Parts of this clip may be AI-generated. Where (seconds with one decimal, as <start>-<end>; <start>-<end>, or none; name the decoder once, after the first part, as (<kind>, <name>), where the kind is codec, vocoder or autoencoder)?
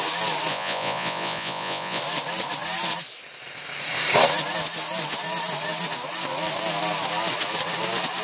0.5-2.0 (vocoder, Vocos)